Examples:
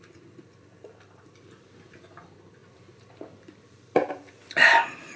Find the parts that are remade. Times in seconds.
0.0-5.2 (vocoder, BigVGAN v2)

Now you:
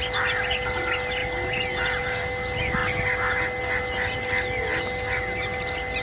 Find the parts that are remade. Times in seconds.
none

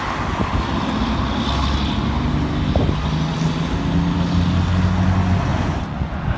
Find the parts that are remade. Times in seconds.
5.5-6.4 (vocoder, Vocos)

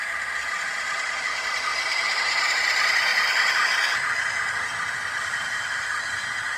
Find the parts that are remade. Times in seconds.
none

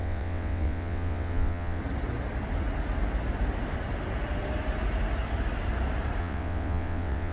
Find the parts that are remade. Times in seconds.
0.0-1.8 (vocoder, WaveNeXt); 6.2-7.3

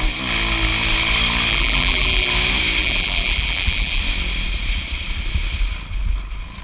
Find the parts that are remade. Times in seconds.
1.5-2.3 (vocoder, BigVGAN v2); 2.8-4.0